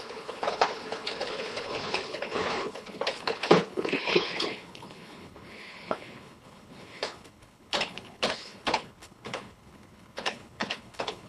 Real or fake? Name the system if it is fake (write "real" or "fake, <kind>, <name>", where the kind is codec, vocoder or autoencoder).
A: fake, codec, HILCodec